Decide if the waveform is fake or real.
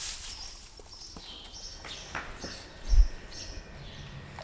real